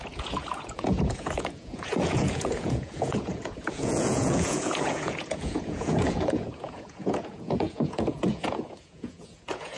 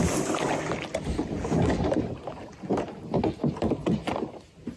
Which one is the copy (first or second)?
first